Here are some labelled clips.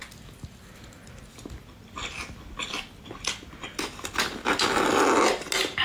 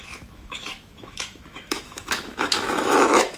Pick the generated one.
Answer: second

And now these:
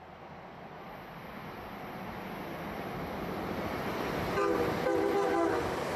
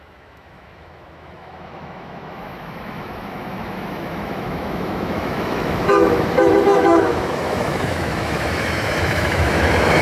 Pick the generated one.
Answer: second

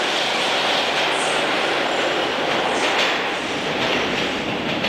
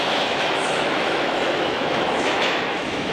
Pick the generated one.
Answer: second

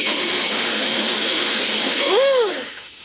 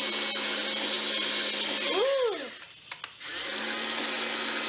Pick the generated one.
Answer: first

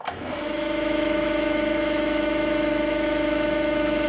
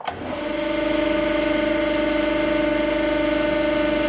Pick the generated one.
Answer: first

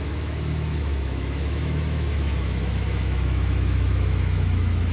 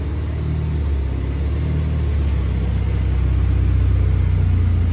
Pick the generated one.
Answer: first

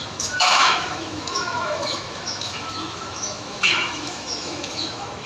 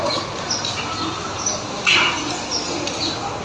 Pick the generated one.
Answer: first